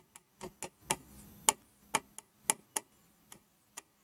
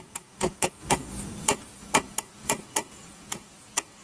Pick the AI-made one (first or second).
second